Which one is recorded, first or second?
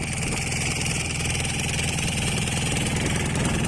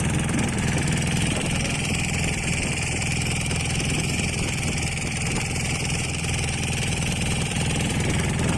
first